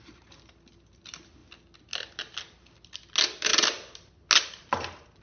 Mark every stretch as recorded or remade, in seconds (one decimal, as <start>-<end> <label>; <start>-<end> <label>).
0.0-5.2 recorded